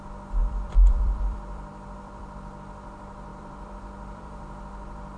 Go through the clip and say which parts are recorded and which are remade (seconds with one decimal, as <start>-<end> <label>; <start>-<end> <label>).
0.0-0.4 recorded; 0.4-2.4 remade; 2.4-3.3 recorded; 3.3-5.2 remade